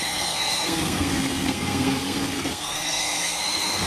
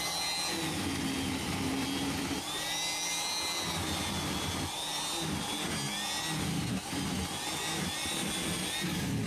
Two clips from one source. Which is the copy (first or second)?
first